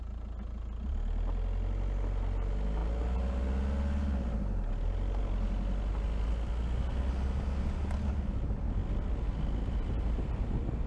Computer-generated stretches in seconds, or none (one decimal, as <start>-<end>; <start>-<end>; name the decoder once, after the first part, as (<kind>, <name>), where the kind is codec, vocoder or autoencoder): none